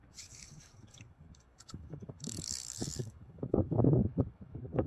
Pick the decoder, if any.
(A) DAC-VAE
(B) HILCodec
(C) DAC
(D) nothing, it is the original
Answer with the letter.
C